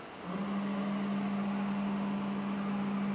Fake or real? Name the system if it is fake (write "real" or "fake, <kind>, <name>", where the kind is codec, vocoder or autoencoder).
real